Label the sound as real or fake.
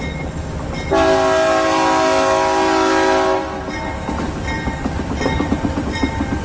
real